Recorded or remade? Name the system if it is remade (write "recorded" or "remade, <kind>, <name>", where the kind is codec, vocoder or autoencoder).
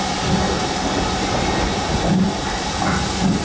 recorded